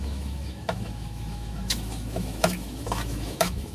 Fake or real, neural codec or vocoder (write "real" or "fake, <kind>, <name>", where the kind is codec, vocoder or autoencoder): fake, autoencoder, DAC-VAE